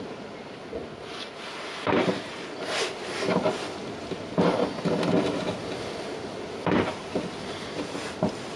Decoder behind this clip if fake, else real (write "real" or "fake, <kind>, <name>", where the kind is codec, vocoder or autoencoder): real